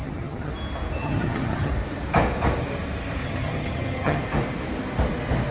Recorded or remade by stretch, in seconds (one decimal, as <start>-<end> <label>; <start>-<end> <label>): 0.0-0.5 remade; 0.5-1.0 recorded; 1.0-1.7 remade; 1.7-3.2 recorded; 3.2-4.2 remade; 4.2-5.5 recorded